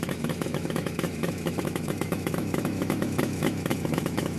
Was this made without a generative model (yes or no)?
no